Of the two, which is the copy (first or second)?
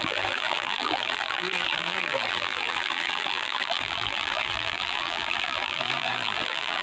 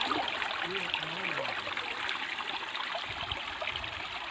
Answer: first